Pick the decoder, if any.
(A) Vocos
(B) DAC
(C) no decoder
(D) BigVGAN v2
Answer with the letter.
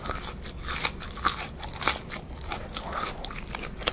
D